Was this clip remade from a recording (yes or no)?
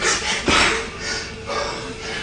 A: no